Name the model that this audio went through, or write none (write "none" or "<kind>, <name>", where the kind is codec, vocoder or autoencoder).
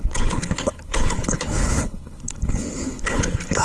codec, HILCodec